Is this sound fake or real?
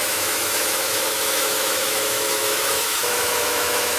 fake